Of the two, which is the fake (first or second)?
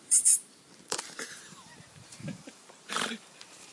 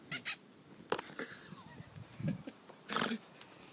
first